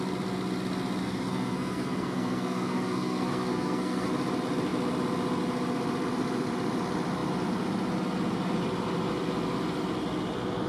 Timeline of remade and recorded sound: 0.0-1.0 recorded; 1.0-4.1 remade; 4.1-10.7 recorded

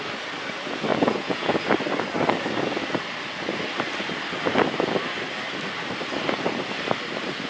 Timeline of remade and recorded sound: 0.0-0.9 recorded; 0.9-1.6 remade; 1.6-7.5 recorded

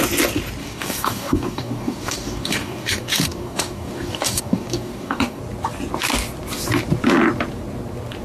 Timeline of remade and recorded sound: 0.0-0.6 recorded; 0.6-5.4 remade; 5.4-8.2 recorded

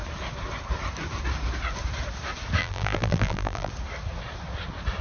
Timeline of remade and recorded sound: 0.0-2.6 recorded; 2.6-3.7 remade; 3.7-5.0 recorded